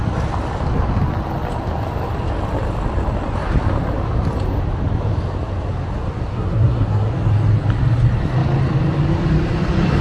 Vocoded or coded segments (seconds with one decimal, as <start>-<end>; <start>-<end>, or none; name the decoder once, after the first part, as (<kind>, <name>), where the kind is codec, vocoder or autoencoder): 6.3-7.1 (codec, SNAC)